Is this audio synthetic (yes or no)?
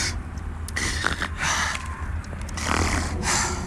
no